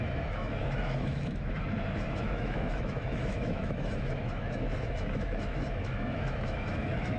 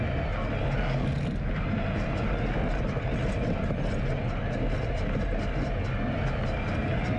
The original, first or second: second